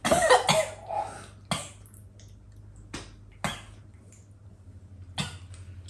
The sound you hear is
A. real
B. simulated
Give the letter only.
A